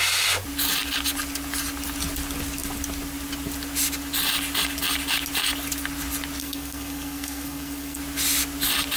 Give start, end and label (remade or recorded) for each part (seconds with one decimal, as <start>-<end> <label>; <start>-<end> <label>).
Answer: 0.0-6.4 recorded; 6.4-8.0 remade; 8.0-9.0 recorded